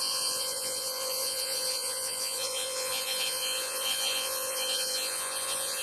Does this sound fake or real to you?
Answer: fake